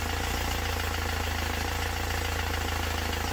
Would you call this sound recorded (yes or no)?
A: yes